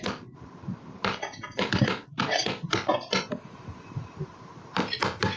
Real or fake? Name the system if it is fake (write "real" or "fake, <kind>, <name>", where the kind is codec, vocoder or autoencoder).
fake, vocoder, BigVGAN v2